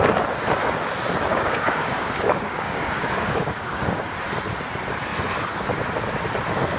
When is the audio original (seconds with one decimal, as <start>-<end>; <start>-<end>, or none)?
0.0-1.3; 4.0-6.8